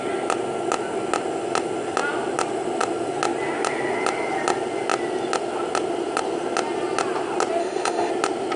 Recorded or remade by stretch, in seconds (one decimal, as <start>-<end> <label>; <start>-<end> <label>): 0.0-7.6 recorded; 7.6-8.1 remade; 8.1-8.6 recorded